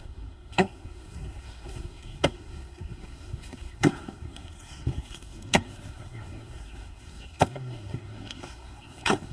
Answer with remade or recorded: remade